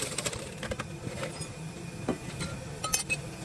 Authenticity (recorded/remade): recorded